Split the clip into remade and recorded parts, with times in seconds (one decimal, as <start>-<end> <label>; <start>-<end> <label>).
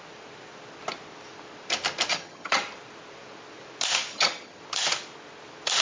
0.0-2.1 recorded; 2.1-2.6 remade; 2.6-4.1 recorded; 4.1-4.6 remade; 4.6-5.8 recorded